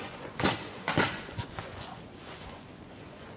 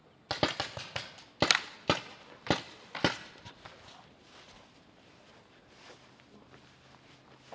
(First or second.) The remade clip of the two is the first